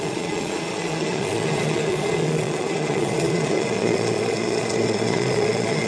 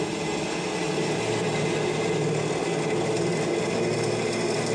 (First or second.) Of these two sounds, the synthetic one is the first